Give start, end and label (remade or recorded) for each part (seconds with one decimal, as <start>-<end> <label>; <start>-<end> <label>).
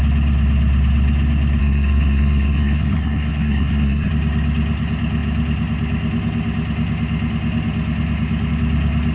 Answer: 0.0-1.6 recorded; 1.6-4.1 remade; 4.1-9.1 recorded